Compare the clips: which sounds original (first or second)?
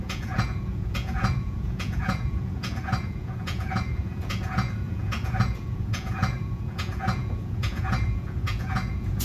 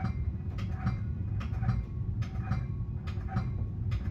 second